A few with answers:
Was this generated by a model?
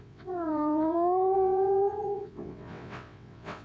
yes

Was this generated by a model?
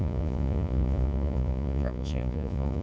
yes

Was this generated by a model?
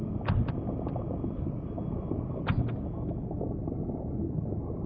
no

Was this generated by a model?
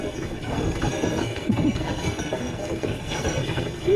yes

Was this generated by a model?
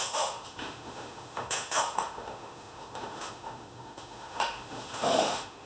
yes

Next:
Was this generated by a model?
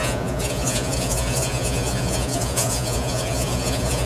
yes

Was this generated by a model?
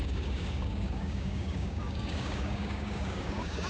yes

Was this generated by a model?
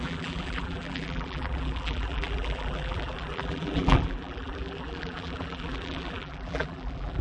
yes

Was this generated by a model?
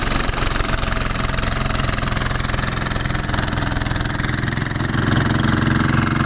no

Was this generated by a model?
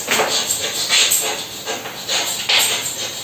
no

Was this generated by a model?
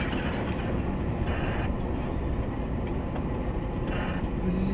no